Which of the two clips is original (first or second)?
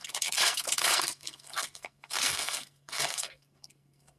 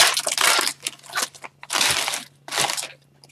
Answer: second